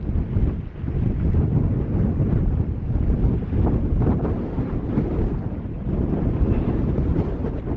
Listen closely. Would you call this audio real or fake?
real